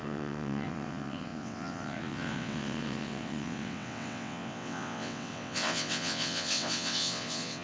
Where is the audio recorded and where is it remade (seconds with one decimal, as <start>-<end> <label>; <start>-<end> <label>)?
0.0-7.6 remade